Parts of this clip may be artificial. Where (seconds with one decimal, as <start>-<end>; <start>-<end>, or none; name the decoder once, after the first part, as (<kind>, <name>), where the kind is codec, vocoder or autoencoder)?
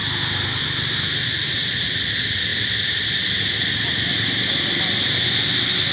none